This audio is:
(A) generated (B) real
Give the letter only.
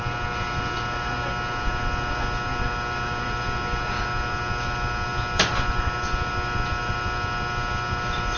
B